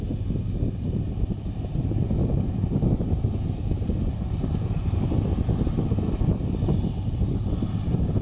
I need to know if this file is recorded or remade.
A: recorded